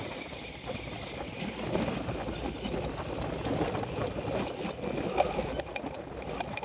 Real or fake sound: real